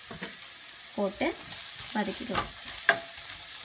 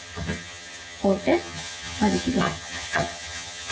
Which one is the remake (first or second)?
second